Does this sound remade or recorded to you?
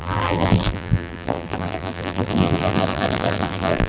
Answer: remade